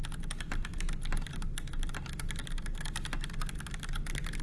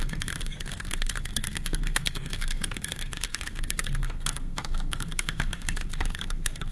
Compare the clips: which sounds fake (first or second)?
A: second